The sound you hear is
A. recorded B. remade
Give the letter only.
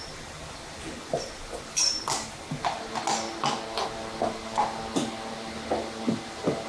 A